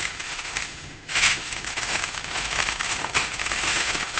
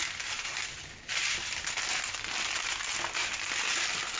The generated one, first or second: first